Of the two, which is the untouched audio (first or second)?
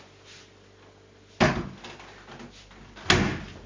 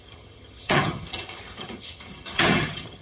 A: first